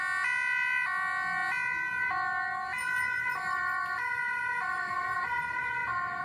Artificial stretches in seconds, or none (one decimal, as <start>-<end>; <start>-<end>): none